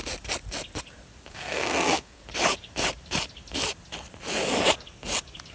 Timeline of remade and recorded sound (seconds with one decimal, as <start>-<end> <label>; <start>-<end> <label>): 0.0-1.3 recorded; 1.3-2.2 remade; 2.2-5.5 recorded